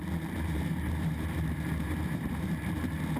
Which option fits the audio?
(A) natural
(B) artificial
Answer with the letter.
B